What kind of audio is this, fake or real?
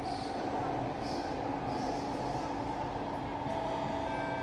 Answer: real